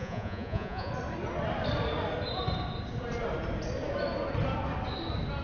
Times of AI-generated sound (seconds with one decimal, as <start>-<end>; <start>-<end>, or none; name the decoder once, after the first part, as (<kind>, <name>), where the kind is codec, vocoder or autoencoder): 0.0-0.9 (vocoder, Vocos)

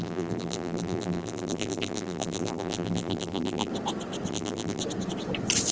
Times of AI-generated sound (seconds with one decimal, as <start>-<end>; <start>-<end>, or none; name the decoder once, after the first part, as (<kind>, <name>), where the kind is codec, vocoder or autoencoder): 0.0-3.7 (vocoder, BigVGAN v2); 4.3-4.8

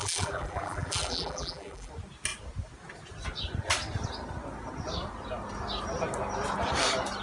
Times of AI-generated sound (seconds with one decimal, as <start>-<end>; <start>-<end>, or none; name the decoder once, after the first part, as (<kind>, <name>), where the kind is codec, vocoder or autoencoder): 0.0-1.9 (vocoder, BigVGAN v2)

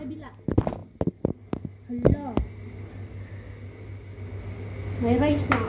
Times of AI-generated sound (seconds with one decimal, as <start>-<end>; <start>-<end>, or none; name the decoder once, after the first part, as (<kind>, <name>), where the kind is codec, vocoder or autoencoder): none

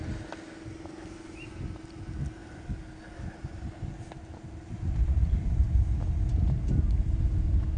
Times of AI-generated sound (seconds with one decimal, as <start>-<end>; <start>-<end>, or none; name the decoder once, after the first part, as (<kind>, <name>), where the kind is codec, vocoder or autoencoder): none